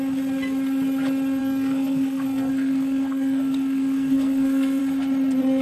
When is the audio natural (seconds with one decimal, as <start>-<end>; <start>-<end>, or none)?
0.0-1.4; 4.8-5.6